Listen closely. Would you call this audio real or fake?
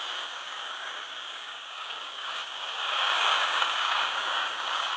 fake